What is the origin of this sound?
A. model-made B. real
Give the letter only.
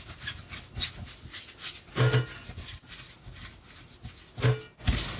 B